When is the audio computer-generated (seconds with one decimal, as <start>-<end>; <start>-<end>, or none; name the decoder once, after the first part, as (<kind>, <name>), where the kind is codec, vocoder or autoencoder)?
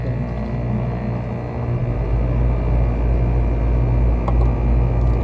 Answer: none